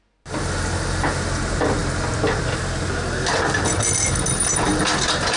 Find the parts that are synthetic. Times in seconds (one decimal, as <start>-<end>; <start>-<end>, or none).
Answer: 4.7-5.4